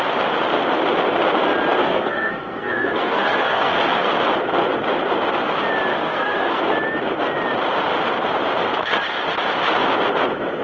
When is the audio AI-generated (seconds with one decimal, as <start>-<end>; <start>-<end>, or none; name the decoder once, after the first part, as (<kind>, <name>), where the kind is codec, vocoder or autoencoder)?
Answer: 1.8-4.1 (codec, SNAC); 5.9-6.6